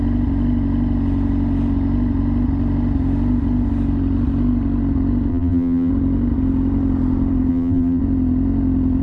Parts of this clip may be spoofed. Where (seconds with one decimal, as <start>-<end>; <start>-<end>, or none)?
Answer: 5.3-5.9; 7.5-8.0